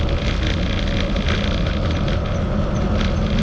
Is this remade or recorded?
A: recorded